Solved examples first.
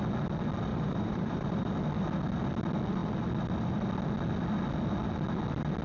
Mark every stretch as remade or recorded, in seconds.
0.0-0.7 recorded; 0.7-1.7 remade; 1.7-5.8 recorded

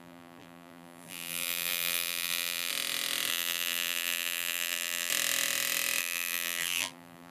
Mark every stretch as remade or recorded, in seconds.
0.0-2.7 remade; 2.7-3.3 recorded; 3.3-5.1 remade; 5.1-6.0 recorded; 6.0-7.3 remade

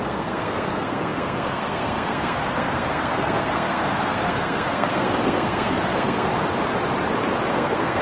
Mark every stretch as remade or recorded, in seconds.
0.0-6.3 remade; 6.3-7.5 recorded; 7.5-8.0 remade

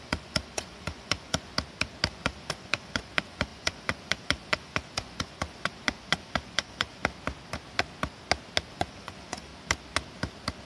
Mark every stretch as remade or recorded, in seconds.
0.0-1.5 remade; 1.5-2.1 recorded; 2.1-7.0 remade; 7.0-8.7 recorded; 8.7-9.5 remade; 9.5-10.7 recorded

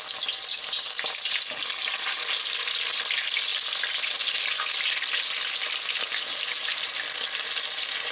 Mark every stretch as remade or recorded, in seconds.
0.0-6.1 recorded; 6.1-6.9 remade; 6.9-8.1 recorded